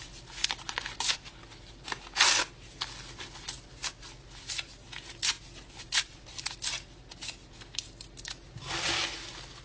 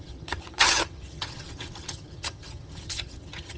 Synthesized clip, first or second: second